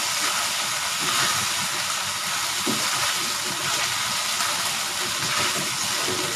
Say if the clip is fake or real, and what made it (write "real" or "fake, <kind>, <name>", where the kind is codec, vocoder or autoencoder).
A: real